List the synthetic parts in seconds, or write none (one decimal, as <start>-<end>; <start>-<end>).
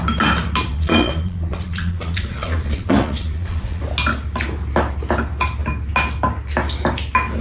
0.7-3.8